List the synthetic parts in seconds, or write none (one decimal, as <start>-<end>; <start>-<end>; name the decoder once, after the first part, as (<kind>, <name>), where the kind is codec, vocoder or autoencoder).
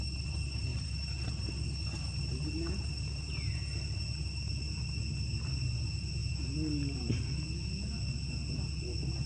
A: 0.7-1.5 (vocoder, BigVGAN v2)